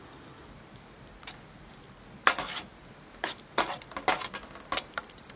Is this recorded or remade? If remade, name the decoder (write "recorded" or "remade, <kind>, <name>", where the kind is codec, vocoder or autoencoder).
recorded